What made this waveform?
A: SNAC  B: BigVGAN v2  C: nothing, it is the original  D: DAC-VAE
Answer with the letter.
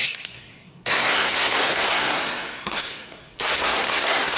A